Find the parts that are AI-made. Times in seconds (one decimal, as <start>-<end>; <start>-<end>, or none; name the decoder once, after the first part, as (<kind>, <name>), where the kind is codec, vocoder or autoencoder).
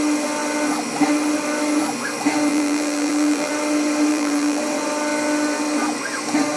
2.5-3.5 (vocoder, BigVGAN v2); 4.1-4.6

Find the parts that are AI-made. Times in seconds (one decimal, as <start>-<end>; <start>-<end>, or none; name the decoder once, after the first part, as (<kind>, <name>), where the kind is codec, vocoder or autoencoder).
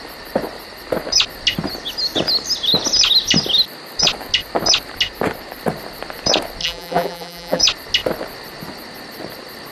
6.6-7.6 (vocoder, BigVGAN v2)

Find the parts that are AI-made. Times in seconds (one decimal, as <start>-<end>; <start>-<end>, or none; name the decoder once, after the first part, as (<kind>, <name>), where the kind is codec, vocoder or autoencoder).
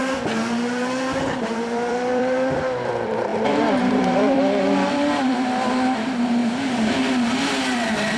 1.5-6.4 (vocoder, BigVGAN v2); 7.5-8.2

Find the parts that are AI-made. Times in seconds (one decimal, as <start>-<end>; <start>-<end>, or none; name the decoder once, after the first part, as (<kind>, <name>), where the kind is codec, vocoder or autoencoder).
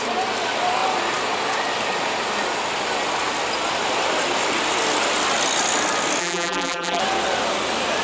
6.2-7.0 (vocoder, BigVGAN v2)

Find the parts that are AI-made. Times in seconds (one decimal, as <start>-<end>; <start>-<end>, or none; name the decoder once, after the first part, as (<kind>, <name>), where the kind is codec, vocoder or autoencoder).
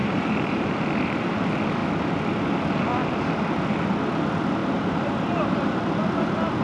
0.0-1.2 (vocoder, BigVGAN v2); 4.6-5.9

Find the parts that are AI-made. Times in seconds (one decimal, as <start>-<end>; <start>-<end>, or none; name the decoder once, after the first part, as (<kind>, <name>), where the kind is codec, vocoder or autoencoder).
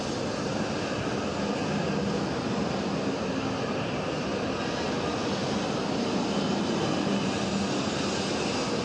none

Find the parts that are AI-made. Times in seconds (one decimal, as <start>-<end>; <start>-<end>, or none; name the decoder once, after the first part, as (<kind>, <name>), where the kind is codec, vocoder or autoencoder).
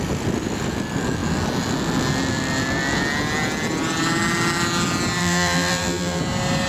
5.2-6.2 (vocoder, BigVGAN v2)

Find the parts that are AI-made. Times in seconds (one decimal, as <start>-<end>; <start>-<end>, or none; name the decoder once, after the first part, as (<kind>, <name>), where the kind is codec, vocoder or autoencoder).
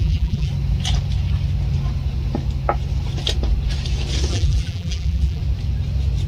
0.0-0.5 (vocoder, BigVGAN v2); 4.3-5.4